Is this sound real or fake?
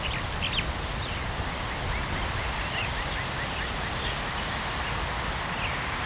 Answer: real